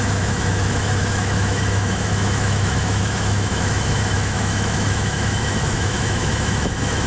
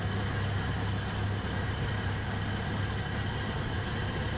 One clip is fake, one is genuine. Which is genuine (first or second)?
second